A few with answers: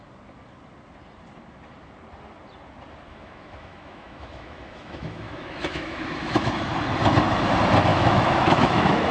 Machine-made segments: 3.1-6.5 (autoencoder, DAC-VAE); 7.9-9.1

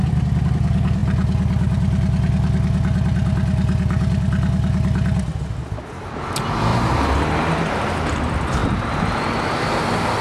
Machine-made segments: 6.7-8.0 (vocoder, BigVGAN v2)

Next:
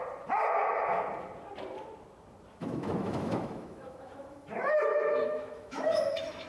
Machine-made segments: 2.6-6.5 (autoencoder, DAC-VAE)

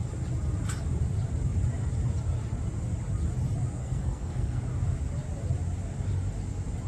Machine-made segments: 3.8-4.6 (codec, SNAC)

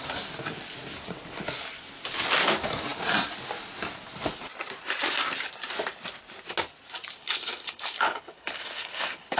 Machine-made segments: 7.2-9.4 (codec, HILCodec)